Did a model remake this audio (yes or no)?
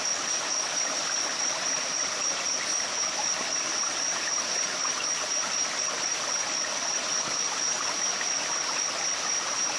no